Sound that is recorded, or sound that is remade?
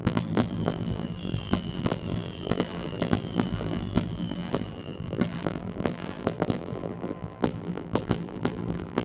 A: remade